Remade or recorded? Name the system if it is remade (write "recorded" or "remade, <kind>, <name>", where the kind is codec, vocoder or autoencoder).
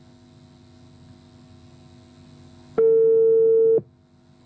recorded